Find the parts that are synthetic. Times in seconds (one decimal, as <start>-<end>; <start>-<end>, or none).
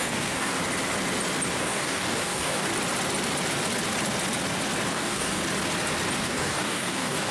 0.0-0.6; 1.5-2.7; 4.9-5.4; 6.2-7.3